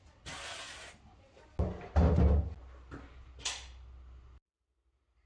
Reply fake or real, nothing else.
real